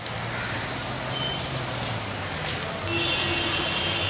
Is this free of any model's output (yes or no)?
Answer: yes